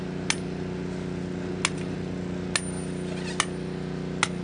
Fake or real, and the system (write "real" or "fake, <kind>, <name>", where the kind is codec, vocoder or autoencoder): real